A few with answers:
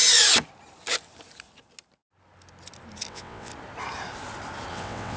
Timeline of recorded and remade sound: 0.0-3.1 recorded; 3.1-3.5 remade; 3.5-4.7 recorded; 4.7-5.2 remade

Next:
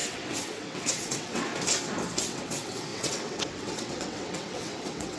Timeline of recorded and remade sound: 0.0-1.5 remade; 1.5-2.2 recorded; 2.2-5.2 remade

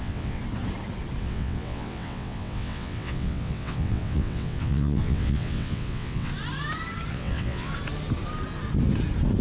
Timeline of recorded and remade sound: 0.0-0.4 remade; 0.4-1.2 recorded; 1.2-6.3 remade; 6.3-7.1 recorded; 7.1-7.7 remade; 7.7-9.4 recorded